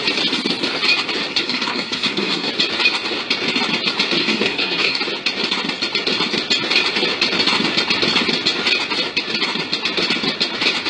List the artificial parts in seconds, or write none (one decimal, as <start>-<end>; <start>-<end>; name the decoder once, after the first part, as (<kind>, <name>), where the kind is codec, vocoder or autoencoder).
1.3-2.5 (codec, SNAC); 4.2-5.0

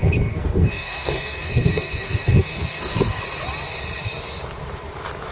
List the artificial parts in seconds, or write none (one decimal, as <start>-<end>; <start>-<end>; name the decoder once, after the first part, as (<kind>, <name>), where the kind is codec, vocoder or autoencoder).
0.0-3.2 (codec, SNAC)